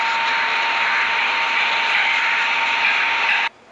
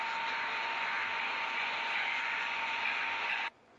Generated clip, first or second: second